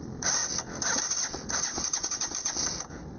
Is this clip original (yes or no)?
no